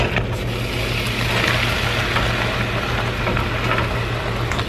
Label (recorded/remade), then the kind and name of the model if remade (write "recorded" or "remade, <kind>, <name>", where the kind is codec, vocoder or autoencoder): recorded